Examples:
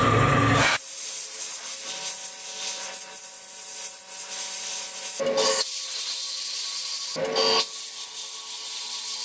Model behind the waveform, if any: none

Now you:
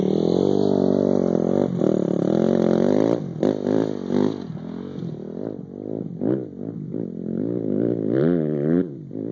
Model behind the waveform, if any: none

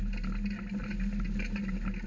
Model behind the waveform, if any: none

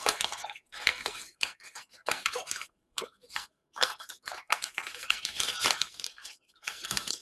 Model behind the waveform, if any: codec, SNAC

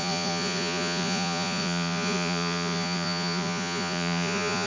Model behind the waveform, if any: vocoder, Vocos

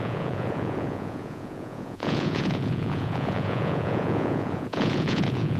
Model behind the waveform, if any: vocoder, Vocos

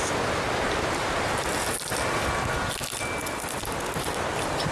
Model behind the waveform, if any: none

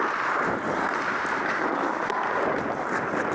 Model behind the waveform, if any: none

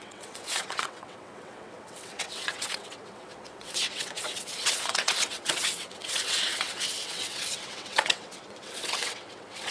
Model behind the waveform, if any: vocoder, WaveNeXt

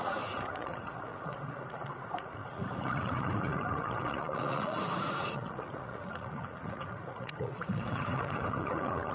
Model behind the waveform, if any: vocoder, Vocos